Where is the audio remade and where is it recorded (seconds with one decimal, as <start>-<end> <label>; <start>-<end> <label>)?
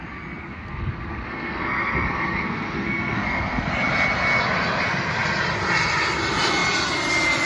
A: 0.0-0.4 recorded; 0.4-3.7 remade; 3.7-7.5 recorded